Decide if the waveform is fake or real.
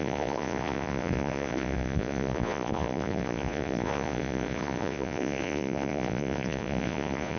fake